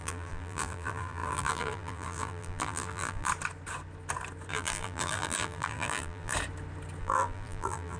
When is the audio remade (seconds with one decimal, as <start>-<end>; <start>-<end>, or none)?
0.0-3.3; 4.5-6.3; 7.0-8.0